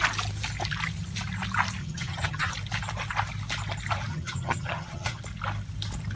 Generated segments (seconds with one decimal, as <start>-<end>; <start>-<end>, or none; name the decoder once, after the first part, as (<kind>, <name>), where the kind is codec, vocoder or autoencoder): 1.8-2.5 (vocoder, HiFi-GAN); 4.1-5.2

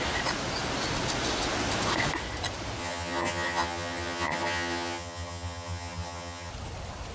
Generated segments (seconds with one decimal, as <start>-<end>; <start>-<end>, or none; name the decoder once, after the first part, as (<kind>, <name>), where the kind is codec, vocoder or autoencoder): 2.8-6.5 (vocoder, HiFi-GAN)